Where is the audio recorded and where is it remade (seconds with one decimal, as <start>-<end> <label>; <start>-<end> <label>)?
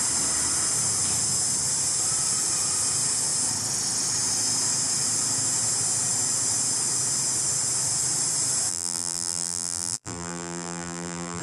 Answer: 0.0-8.7 recorded; 8.7-11.4 remade